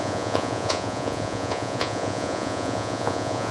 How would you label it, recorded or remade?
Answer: remade